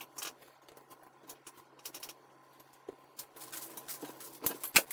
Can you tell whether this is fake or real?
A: real